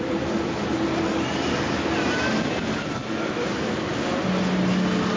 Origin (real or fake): real